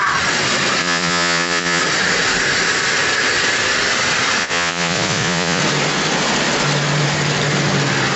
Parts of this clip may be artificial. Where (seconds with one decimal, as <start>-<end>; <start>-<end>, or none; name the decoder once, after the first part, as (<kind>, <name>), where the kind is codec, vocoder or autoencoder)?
0.8-1.8 (vocoder, Vocos); 4.4-5.6

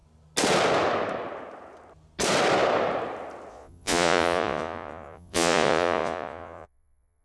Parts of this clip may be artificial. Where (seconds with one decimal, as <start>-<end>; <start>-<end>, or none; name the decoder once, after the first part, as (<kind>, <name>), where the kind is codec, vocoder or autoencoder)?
3.5-7.2 (vocoder, Vocos)

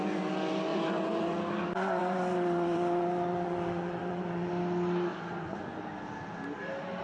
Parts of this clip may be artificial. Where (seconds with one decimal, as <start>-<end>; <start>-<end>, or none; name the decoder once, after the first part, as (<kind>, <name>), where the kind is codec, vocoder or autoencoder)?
0.7-1.4 (vocoder, Vocos); 2.0-4.5; 5.1-5.6

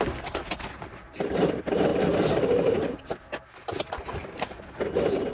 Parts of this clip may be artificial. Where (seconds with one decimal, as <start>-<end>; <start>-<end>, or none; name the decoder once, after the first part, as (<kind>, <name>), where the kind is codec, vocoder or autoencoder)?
none

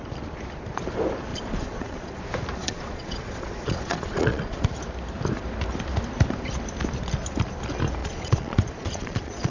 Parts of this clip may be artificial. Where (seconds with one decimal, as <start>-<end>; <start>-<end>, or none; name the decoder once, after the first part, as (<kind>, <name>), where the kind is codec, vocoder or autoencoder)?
1.3-2.2 (vocoder, Vocos); 2.6-4.7; 8.0-9.5

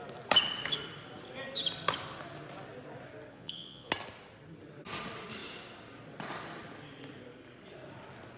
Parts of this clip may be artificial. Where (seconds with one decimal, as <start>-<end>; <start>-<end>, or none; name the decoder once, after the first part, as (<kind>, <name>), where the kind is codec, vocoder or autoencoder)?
3.3-3.9 (vocoder, Vocos)

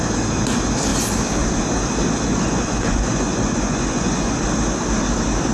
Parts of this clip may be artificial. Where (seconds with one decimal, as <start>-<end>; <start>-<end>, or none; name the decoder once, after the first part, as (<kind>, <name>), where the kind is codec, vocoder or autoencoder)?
2.3-4.4 (vocoder, Vocos)

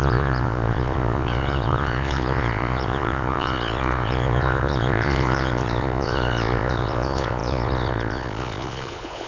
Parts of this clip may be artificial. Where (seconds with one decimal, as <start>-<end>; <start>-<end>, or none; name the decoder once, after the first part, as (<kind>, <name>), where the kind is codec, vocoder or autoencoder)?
0.0-9.3 (vocoder, Vocos)